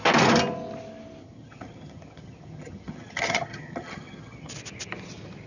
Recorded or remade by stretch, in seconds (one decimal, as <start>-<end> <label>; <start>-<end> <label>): 0.0-1.2 recorded; 1.2-4.5 remade; 4.5-5.5 recorded